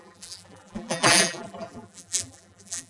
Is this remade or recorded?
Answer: remade